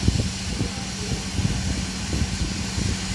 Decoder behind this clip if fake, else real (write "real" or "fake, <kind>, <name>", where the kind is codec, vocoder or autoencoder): real